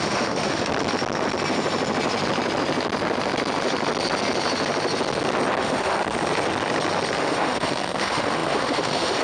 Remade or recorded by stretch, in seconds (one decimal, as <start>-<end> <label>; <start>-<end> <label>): 0.0-0.7 remade; 0.7-5.6 recorded; 5.6-6.0 remade; 6.0-7.2 recorded; 7.2-9.2 remade